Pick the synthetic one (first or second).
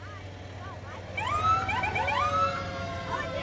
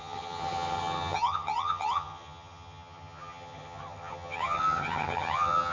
second